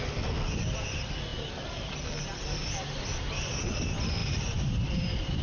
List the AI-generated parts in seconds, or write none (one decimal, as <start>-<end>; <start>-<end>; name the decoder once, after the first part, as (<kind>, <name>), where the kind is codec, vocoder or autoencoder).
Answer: 4.2-5.4 (vocoder, BigVGAN v2)